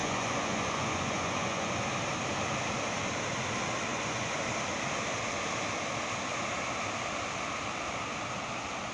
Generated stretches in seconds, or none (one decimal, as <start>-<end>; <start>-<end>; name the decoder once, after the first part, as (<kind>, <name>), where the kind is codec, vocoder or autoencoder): 0.0-1.7 (vocoder, Vocos); 3.9-4.4